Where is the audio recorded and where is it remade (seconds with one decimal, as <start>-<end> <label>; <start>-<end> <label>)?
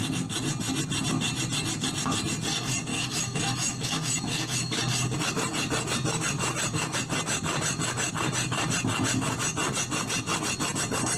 0.0-2.9 recorded; 2.9-4.8 remade; 4.8-11.2 recorded